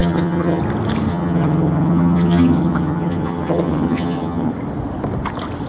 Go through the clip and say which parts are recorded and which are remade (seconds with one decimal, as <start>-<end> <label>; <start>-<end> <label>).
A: 0.0-0.6 remade; 0.6-1.1 recorded; 1.1-4.5 remade; 4.5-5.7 recorded